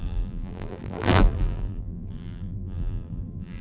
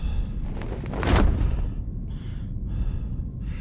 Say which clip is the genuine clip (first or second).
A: second